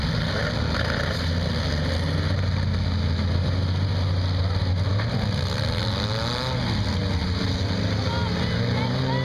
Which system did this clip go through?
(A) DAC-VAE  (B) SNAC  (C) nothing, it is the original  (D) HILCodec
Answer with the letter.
C